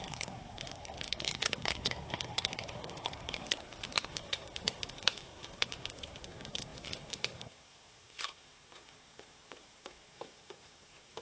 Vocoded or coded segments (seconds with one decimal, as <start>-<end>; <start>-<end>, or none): 0.0-11.2